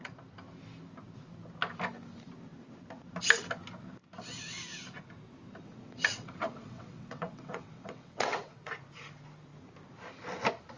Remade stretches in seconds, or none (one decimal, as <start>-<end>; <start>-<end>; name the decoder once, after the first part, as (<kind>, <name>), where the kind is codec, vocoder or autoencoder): 5.6-8.7 (vocoder, WaveNeXt)